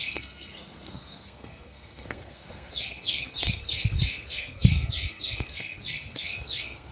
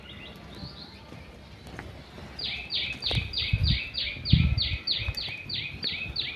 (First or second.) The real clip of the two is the second